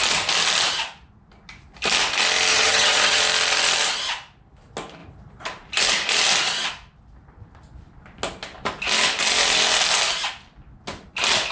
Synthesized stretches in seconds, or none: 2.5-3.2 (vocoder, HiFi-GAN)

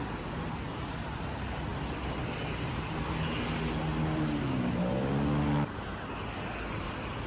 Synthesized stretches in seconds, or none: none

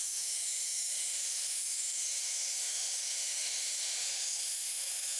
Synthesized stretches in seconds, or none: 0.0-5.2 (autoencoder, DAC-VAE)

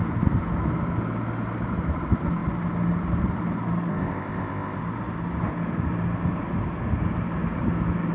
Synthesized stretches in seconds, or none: 3.9-4.8 (codec, ZipCodec)

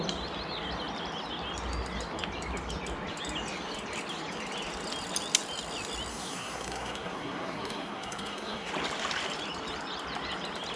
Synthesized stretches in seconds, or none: 6.1-8.7 (codec, SNAC)

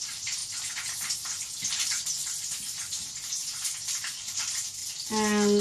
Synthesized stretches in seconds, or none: 0.0-0.4 (vocoder, BigVGAN v2); 1.7-2.2; 3.3-4.8